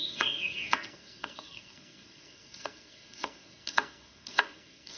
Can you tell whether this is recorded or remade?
remade